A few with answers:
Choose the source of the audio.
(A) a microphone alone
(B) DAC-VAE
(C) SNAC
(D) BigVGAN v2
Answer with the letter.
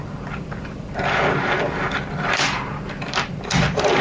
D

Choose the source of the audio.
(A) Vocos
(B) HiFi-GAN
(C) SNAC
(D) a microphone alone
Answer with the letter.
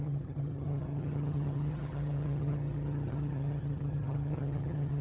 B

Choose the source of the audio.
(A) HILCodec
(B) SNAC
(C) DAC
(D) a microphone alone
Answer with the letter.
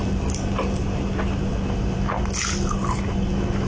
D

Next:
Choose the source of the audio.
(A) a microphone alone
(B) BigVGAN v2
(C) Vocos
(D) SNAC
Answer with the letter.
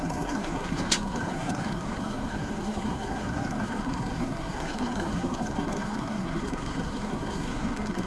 D